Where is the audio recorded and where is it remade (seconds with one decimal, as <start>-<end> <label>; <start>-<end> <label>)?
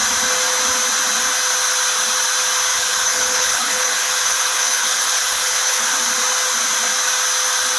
0.0-2.7 recorded; 2.7-5.9 remade; 5.9-7.8 recorded